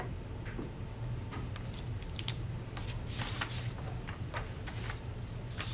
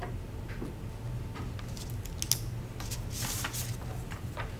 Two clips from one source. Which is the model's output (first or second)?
first